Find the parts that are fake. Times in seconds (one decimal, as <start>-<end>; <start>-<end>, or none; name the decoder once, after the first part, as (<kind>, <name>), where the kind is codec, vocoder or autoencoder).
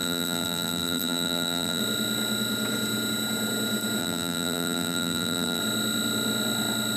0.0-1.8 (vocoder, BigVGAN v2); 4.0-5.6